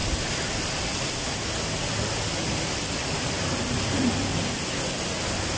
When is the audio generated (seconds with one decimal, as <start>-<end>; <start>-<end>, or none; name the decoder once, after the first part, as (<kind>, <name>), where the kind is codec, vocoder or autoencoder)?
0.0-0.7 (vocoder, BigVGAN v2)

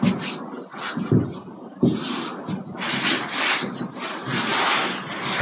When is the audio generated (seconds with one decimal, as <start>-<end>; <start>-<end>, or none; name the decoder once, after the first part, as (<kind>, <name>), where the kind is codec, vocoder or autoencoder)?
none